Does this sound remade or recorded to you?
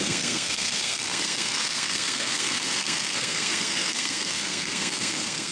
remade